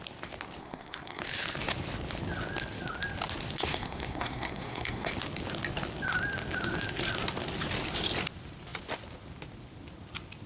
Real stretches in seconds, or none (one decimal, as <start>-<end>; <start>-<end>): 0.0-0.6; 1.2-3.7; 5.1-10.5